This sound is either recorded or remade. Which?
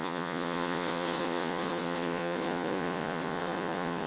remade